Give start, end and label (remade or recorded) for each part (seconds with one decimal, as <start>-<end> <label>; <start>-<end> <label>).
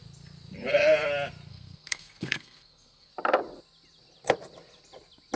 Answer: 0.0-1.5 recorded; 1.5-3.1 remade; 3.1-5.4 recorded